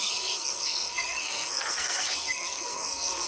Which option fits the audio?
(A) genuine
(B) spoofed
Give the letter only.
B